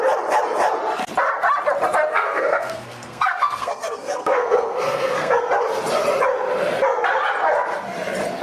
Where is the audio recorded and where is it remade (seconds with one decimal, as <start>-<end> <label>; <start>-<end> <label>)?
0.0-2.1 recorded; 2.1-5.4 remade; 5.4-8.4 recorded